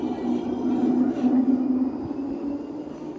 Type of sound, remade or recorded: recorded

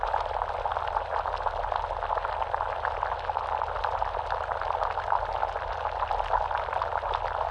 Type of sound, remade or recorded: recorded